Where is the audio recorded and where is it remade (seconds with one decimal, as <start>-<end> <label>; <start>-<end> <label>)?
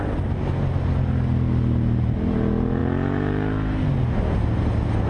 0.0-5.1 recorded